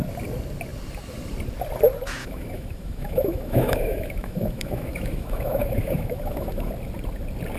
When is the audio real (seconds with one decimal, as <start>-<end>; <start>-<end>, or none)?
0.0-2.2; 6.7-7.6